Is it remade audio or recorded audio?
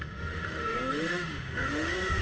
remade